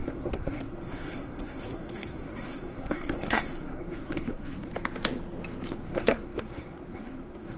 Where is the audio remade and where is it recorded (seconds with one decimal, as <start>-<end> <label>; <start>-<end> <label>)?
0.0-4.7 remade; 4.7-5.7 recorded; 5.7-7.6 remade